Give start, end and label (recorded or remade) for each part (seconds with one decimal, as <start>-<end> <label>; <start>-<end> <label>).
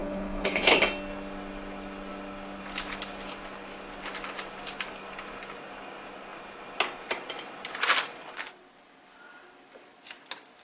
0.0-0.8 remade; 0.8-10.6 recorded